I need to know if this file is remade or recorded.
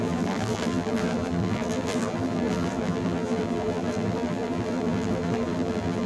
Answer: remade